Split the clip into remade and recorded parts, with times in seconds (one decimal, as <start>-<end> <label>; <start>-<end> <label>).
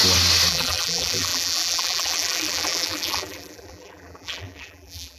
0.0-0.5 recorded; 0.5-5.2 remade